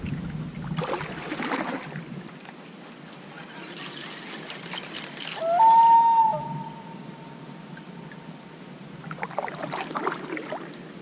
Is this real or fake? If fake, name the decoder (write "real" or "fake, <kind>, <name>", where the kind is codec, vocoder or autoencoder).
real